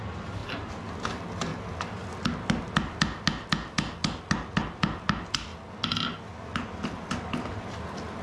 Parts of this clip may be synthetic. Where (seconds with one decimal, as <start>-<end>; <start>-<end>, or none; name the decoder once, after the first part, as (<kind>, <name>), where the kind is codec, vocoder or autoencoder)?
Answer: none